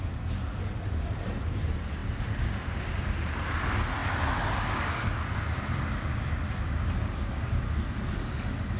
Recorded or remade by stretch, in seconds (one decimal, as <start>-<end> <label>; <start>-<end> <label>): 0.0-7.0 recorded; 7.0-7.6 remade; 7.6-8.8 recorded